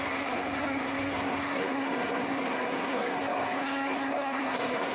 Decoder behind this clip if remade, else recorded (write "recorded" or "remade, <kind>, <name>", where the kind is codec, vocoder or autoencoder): remade, codec, SNAC